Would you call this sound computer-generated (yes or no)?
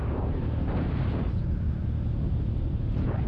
no